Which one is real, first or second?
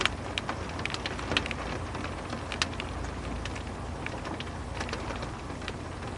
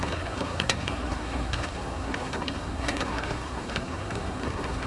first